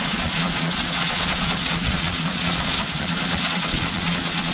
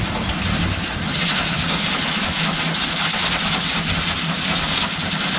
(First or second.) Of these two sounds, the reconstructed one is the first